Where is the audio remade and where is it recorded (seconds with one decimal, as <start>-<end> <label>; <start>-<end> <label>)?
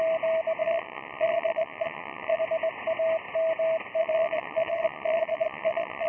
0.0-0.6 recorded; 0.6-2.4 remade; 2.4-4.0 recorded; 4.0-6.1 remade